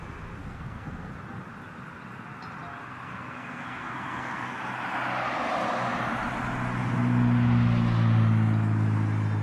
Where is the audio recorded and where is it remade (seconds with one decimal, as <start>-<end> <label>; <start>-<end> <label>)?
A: 0.0-0.4 recorded; 0.4-1.1 remade; 1.1-2.8 recorded; 2.8-4.6 remade; 4.6-9.4 recorded